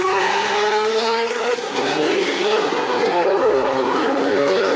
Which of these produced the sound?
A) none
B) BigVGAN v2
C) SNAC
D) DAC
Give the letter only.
C